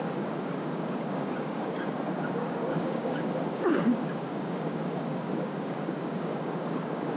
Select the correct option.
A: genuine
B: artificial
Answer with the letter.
B